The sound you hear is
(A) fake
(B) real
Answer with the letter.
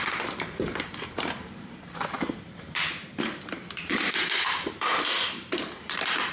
A